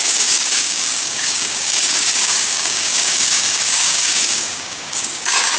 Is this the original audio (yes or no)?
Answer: no